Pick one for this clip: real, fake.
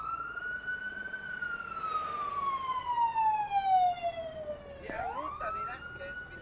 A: real